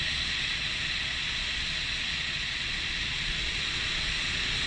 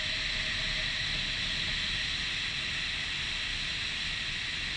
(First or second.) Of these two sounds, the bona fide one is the second